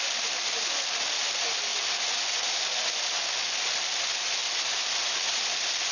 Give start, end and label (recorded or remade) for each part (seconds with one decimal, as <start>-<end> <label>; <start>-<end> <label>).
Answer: 0.0-5.9 recorded